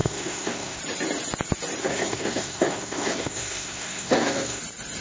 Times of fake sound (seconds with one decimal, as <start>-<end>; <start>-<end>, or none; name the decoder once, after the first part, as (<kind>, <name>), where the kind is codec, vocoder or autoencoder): 0.0-0.8 (codec, SNAC); 1.8-4.6